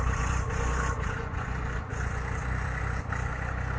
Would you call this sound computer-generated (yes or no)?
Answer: yes